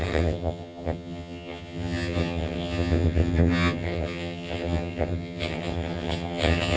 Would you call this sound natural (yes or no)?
no